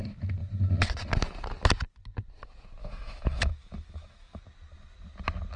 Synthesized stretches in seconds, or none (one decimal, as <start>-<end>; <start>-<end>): 2.8-4.4